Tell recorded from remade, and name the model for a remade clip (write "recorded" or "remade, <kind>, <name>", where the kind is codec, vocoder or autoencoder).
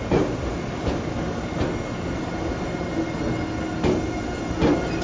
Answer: recorded